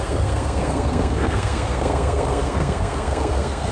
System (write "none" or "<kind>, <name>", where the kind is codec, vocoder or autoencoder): codec, SNAC